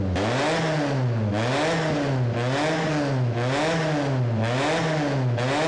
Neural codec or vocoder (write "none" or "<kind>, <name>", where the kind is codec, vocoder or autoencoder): none